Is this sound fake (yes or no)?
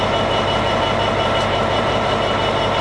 yes